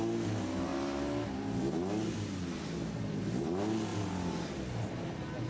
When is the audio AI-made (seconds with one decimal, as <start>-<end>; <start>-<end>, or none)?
none

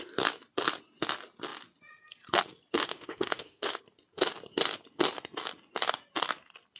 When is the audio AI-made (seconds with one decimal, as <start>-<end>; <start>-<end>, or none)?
2.8-3.8

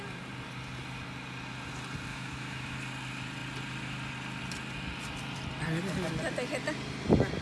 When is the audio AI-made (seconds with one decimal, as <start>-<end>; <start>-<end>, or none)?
2.1-2.8

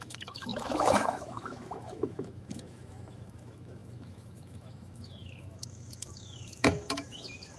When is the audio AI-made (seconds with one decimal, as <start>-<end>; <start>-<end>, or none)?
0.0-7.6

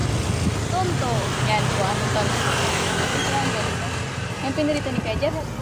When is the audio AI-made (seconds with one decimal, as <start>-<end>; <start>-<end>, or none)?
2.7-3.1

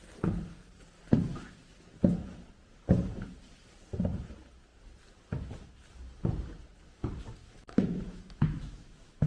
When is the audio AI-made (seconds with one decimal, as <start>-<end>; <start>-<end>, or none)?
7.4-9.3